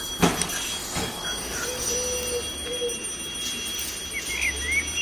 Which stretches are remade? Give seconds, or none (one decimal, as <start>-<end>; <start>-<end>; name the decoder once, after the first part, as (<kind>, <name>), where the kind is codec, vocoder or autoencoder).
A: 0.8-1.9 (codec, DAC)